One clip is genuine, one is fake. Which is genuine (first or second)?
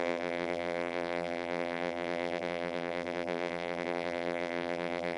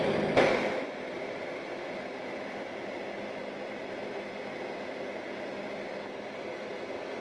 second